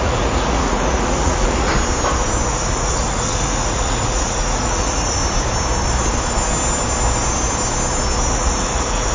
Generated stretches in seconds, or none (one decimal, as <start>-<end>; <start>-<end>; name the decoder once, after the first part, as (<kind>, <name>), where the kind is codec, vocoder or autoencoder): 0.0-1.7 (vocoder, Vocos); 2.5-5.2; 8.3-9.1